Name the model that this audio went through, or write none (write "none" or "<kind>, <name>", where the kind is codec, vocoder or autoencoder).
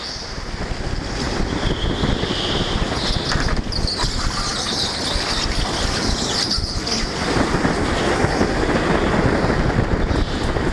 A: none